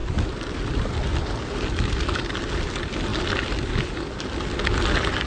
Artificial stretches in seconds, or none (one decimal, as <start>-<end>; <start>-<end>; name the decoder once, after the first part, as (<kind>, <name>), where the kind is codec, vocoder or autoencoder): none